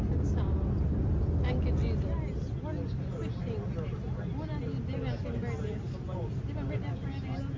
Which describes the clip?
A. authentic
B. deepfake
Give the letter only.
A